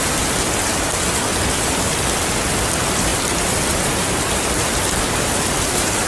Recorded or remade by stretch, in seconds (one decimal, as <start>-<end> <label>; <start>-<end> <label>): 0.0-0.7 remade; 0.7-1.3 recorded; 1.3-6.1 remade